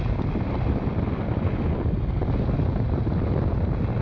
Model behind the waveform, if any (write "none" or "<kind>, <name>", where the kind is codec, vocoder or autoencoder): none